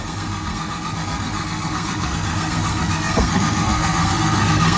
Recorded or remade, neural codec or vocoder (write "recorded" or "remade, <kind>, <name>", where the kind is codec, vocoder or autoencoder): remade, codec, SNAC